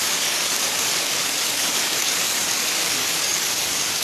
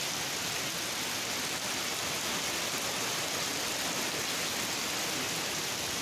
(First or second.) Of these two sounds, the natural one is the second